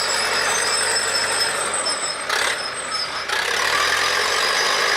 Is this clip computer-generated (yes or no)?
no